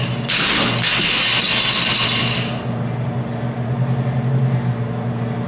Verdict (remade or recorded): recorded